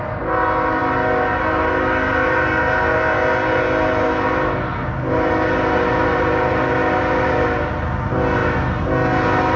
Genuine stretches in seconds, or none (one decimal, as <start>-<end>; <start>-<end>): 0.0-9.6